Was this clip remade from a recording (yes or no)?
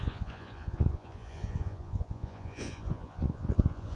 yes